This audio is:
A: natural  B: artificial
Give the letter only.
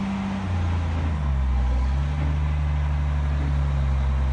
A